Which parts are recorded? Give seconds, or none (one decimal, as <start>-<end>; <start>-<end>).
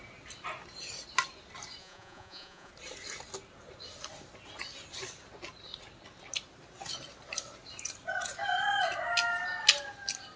0.0-1.8; 2.7-10.4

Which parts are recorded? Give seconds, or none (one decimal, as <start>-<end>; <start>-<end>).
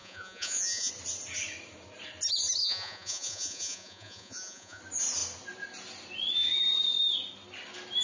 0.9-2.6; 4.8-8.0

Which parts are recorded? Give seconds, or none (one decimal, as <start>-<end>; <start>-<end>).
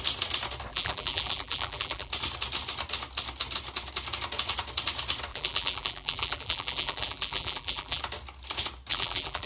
0.0-0.7; 2.1-5.3; 8.0-8.9